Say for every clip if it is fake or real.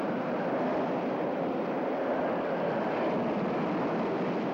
real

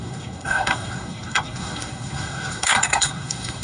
fake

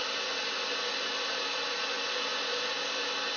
real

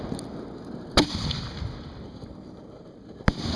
real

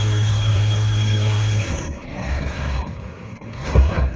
fake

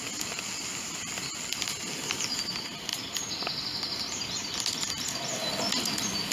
real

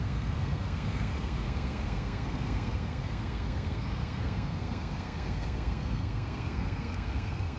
fake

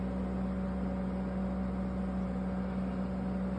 real